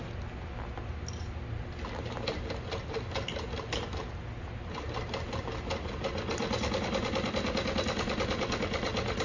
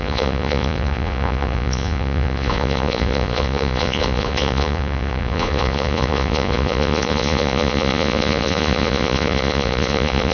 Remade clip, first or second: second